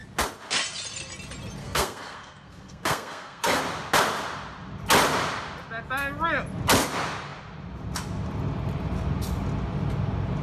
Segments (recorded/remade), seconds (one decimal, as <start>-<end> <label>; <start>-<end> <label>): 0.0-1.6 recorded; 1.6-3.6 remade; 3.6-10.4 recorded